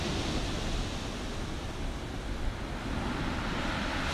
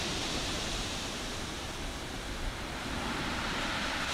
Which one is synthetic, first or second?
second